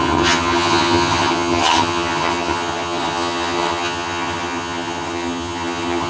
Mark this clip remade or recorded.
remade